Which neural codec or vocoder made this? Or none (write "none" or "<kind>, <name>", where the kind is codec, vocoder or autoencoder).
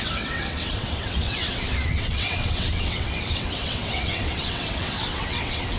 vocoder, WaveNeXt